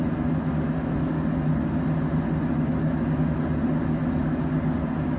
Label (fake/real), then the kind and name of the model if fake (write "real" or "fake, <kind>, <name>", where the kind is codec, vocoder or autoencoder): real